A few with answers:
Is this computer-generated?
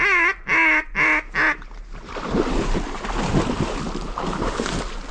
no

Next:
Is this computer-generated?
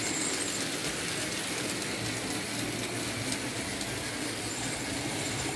no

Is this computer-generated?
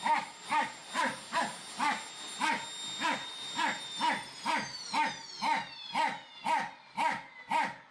no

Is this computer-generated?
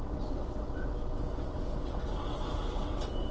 yes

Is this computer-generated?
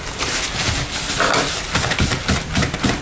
no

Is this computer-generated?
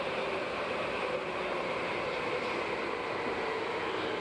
no